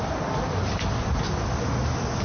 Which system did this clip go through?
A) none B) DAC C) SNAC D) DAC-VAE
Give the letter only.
A